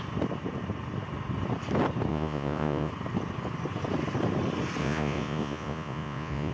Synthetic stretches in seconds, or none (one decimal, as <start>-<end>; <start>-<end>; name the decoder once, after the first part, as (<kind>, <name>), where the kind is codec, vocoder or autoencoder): 2.1-2.9 (vocoder, Vocos); 4.8-6.5